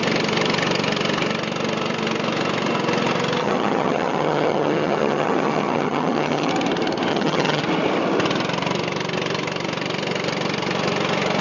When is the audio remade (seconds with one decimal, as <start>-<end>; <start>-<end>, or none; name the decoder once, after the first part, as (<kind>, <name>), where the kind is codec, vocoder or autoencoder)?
3.4-6.5 (vocoder, HiFi-GAN); 7.1-7.6